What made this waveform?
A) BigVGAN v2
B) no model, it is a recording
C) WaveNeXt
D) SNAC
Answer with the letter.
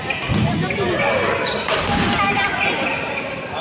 B